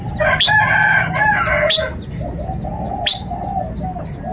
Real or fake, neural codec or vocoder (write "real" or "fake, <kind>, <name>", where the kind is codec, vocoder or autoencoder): real